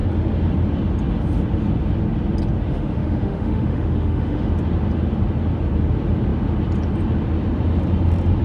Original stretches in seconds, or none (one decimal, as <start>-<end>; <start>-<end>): 0.0-2.7; 4.5-8.4